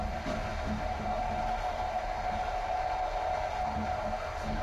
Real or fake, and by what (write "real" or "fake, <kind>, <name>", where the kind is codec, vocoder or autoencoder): real